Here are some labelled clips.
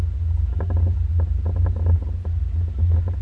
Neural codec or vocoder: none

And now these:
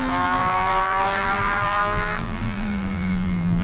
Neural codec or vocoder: vocoder, BigVGAN v2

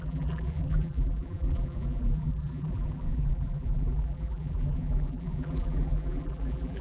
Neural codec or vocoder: vocoder, BigVGAN v2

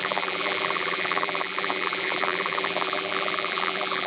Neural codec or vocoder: vocoder, BigVGAN v2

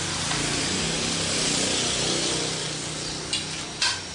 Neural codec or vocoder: none